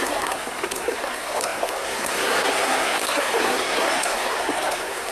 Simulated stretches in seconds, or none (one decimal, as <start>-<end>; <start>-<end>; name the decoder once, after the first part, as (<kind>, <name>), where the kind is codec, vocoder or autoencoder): 0.0-5.1 (codec, SNAC)